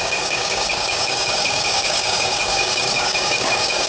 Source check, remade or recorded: remade